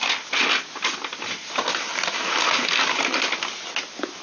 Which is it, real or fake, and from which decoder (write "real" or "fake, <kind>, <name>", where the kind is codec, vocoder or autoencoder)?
real